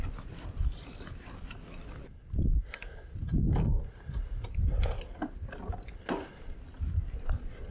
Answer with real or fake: real